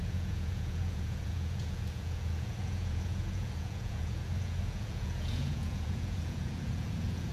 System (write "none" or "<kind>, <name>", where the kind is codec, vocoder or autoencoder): vocoder, Vocos